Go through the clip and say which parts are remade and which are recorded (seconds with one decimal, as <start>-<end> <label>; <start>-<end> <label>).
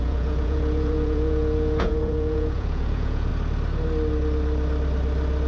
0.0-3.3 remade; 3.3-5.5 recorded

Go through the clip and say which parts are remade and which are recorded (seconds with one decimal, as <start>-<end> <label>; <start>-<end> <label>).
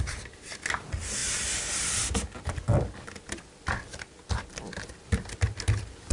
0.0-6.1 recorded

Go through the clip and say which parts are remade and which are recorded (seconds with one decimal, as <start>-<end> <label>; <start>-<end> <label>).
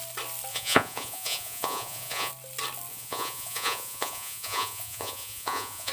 0.0-0.5 recorded; 0.5-2.3 remade; 2.3-2.9 recorded; 2.9-5.9 remade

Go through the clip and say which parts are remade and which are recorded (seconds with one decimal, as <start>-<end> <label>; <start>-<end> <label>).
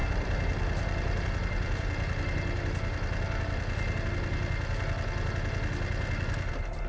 0.0-6.9 recorded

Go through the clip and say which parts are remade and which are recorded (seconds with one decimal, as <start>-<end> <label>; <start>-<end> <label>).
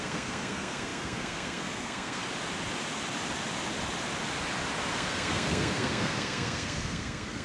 0.0-2.2 remade; 2.2-4.9 recorded; 4.9-7.4 remade